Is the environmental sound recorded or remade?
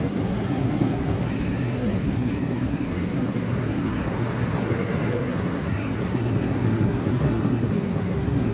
remade